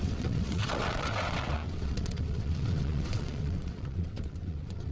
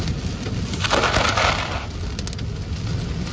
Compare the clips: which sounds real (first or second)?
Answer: second